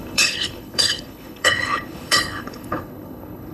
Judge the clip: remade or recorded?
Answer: remade